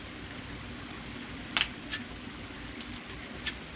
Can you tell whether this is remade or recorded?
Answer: recorded